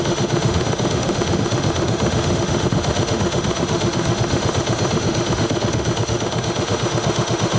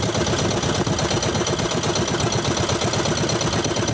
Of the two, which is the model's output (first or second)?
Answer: first